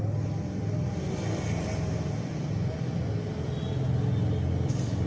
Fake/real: real